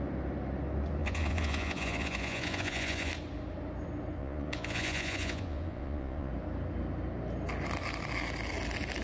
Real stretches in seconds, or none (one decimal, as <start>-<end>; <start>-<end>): 0.0-1.0; 3.1-4.2; 6.3-9.0